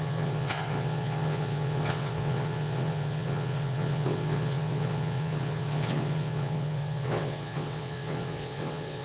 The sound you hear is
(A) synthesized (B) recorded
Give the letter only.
A